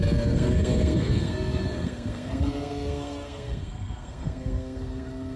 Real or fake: fake